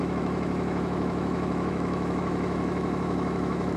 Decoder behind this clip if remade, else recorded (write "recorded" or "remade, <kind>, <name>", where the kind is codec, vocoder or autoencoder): remade, autoencoder, DAC-VAE